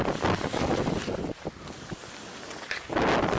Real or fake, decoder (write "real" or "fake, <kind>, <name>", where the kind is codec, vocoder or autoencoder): real